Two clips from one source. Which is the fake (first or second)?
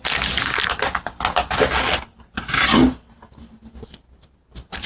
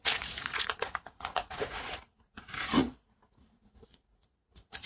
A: second